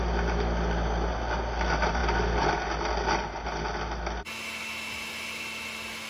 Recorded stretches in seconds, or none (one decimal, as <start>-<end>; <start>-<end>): 0.0-6.1